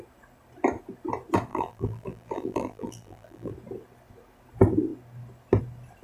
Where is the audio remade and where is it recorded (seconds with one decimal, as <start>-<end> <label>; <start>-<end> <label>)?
0.0-1.5 recorded; 1.5-3.5 remade; 3.5-6.0 recorded

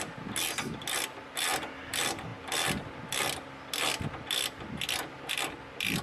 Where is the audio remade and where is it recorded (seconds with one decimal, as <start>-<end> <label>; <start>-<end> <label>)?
0.0-6.0 recorded

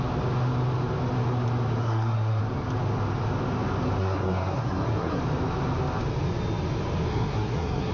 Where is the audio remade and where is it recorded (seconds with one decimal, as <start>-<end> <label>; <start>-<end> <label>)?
0.0-1.8 recorded; 1.8-2.4 remade; 2.4-4.0 recorded; 4.0-5.2 remade; 5.2-7.1 recorded; 7.1-7.9 remade

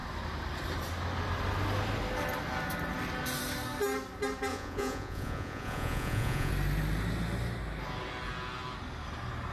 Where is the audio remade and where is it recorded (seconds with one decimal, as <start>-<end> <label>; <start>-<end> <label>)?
0.0-4.5 recorded; 4.5-6.5 remade; 6.5-9.5 recorded

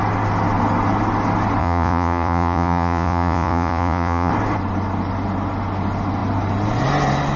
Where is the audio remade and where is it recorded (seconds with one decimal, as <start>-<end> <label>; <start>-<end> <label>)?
0.0-1.6 recorded; 1.6-4.3 remade; 4.3-7.4 recorded